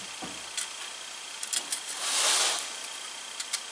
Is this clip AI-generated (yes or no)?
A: no